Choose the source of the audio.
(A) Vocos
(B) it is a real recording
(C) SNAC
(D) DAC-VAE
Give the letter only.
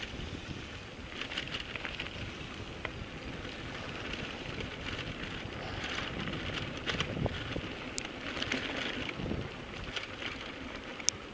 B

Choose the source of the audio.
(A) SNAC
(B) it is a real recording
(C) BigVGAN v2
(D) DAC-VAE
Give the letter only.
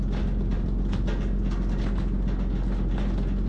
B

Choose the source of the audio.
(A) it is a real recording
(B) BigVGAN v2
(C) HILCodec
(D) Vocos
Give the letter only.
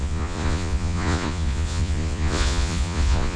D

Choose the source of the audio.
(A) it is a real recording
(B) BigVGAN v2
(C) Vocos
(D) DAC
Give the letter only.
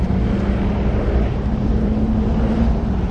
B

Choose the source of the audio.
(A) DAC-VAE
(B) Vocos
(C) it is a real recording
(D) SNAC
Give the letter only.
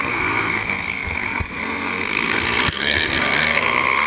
D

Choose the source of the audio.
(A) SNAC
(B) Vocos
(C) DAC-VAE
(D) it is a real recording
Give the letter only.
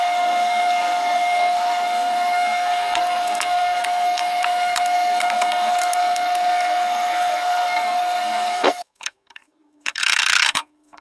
A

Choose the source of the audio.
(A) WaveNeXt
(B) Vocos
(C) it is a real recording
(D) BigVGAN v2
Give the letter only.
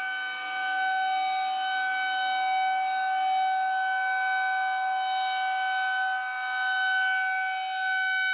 C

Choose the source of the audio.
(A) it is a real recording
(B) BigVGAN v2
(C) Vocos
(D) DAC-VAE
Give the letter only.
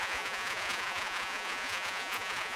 C